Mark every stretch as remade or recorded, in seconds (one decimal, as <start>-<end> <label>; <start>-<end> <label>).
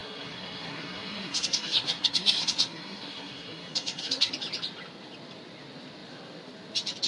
0.0-4.3 remade; 4.3-7.1 recorded